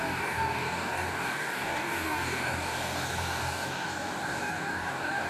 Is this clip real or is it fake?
fake